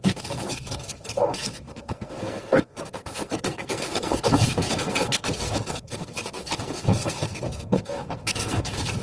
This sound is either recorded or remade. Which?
remade